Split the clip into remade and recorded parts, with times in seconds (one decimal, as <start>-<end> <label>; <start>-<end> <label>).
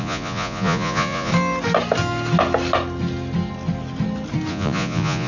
0.0-1.3 remade; 1.3-4.5 recorded; 4.5-5.3 remade